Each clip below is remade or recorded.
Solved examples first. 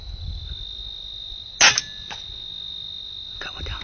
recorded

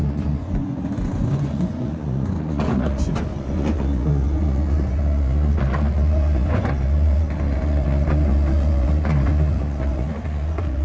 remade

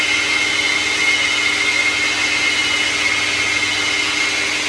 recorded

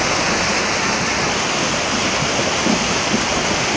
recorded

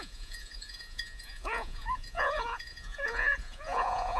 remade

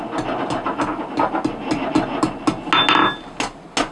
recorded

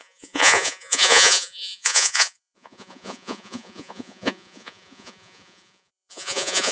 remade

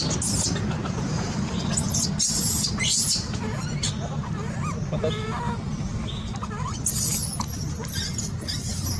recorded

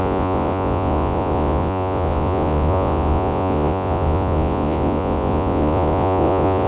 remade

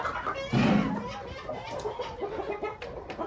recorded